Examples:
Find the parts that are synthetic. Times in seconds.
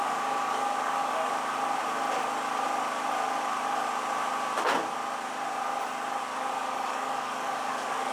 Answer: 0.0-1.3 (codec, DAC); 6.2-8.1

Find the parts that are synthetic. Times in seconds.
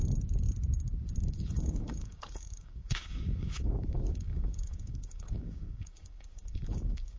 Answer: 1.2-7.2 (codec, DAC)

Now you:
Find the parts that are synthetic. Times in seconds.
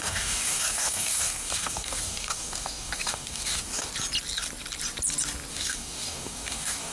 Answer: 0.0-3.9 (codec, DAC); 5.5-6.9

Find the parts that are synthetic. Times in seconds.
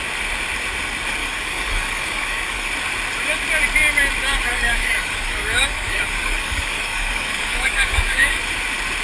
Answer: 1.2-2.7 (codec, DAC); 4.5-8.4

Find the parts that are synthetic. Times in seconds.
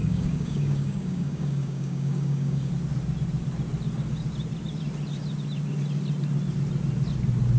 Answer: 0.0-2.7 (codec, DAC)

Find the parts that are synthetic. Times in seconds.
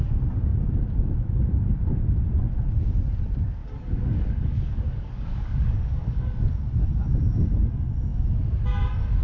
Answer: 3.6-6.3 (codec, DAC)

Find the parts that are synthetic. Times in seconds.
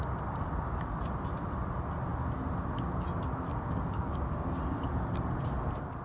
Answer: 3.5-4.6 (codec, DAC)